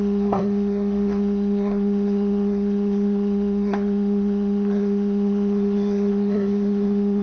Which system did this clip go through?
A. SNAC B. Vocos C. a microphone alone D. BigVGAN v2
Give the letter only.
A